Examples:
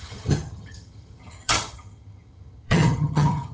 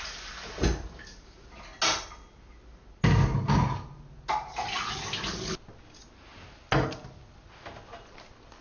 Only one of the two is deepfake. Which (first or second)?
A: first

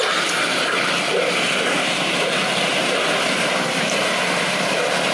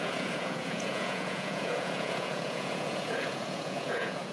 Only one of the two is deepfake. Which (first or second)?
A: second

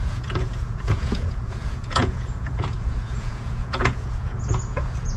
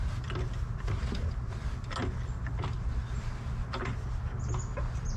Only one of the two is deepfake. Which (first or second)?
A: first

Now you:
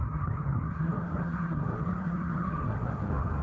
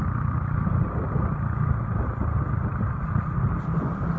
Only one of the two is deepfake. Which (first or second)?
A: first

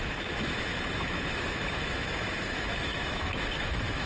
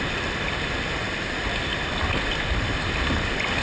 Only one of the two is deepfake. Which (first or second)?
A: first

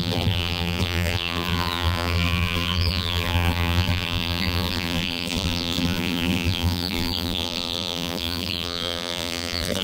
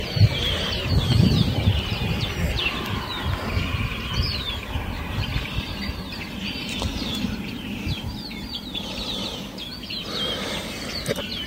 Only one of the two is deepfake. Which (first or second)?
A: first